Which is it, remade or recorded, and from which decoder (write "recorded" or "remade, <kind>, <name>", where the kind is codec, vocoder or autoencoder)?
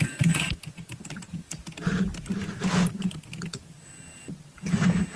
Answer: recorded